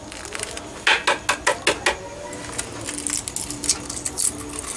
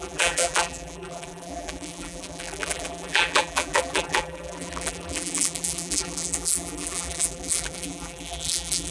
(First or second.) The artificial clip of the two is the second